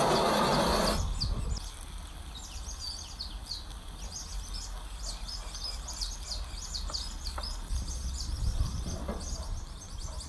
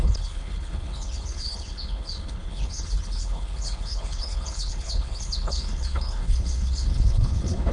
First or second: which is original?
first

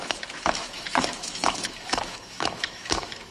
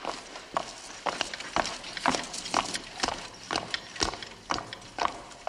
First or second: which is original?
second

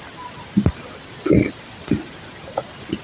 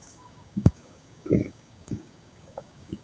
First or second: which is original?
first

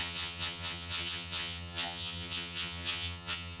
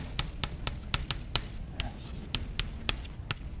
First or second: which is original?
second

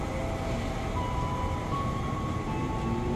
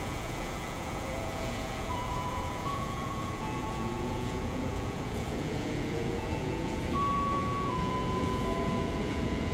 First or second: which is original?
first